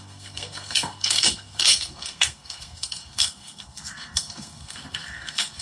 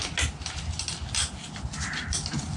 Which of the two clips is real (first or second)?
second